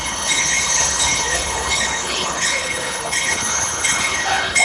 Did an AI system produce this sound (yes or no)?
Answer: yes